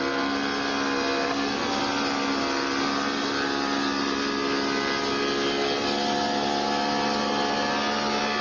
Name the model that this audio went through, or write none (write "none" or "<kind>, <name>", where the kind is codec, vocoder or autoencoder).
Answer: none